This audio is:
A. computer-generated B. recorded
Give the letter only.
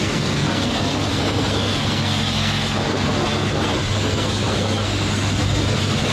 A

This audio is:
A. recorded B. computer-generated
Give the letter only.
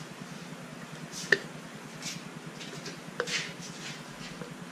A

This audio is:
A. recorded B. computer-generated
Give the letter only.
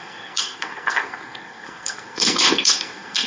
B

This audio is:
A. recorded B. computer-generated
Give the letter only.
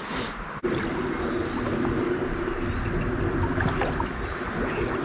A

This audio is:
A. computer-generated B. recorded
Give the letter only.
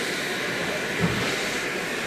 B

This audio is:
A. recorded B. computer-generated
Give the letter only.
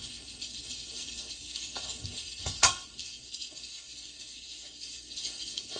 B